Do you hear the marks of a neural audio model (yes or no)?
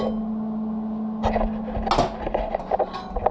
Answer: no